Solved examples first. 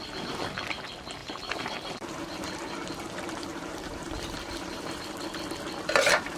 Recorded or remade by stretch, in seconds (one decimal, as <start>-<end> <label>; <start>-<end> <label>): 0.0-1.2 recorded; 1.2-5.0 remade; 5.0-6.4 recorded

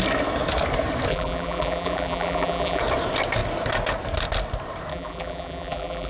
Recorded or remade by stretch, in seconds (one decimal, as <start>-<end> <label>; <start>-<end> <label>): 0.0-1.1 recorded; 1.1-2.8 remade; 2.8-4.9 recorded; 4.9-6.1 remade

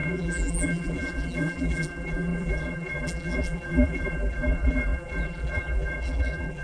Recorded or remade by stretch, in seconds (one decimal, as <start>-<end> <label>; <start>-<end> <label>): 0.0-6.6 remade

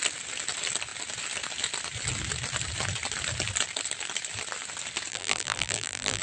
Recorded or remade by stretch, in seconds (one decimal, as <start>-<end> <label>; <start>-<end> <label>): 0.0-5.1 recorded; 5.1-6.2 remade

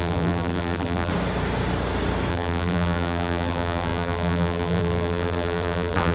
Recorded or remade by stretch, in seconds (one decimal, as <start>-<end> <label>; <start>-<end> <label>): 0.0-1.1 remade; 1.1-2.3 recorded; 2.3-6.1 remade